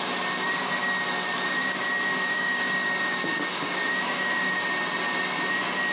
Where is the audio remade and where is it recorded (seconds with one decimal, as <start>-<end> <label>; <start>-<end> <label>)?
0.0-1.6 recorded; 1.6-4.7 remade; 4.7-5.9 recorded